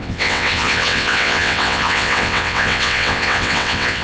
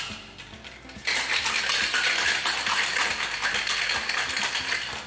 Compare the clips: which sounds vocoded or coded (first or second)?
first